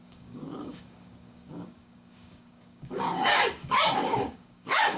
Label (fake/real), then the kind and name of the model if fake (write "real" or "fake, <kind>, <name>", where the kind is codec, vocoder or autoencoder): fake, codec, DAC